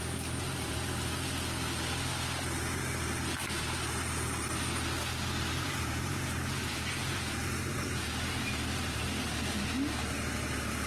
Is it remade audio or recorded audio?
recorded